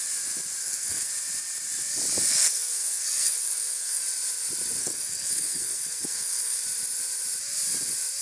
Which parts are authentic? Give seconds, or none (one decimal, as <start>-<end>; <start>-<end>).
0.0-0.6; 1.1-2.3; 4.0-4.8; 6.6-8.2